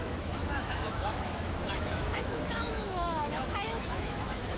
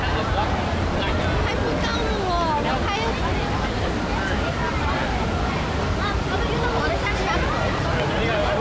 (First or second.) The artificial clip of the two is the first